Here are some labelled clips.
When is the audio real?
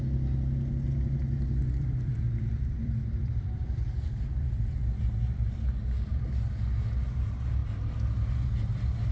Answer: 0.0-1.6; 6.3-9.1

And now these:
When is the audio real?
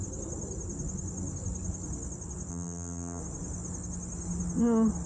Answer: 0.0-2.5; 3.2-5.1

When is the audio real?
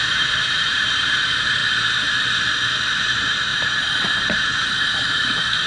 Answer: 1.6-3.0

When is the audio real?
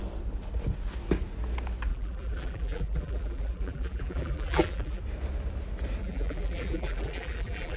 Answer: 0.0-1.9; 5.0-6.0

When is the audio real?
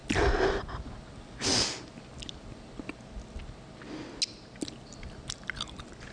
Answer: 0.0-6.1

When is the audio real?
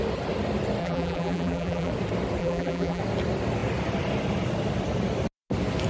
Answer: 0.0-0.8; 1.9-2.4; 3.0-5.9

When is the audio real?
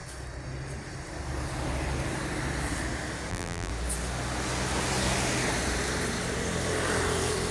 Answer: 0.0-3.3; 3.7-7.5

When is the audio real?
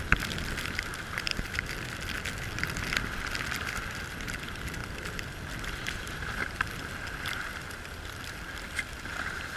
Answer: 0.0-1.3; 2.6-4.8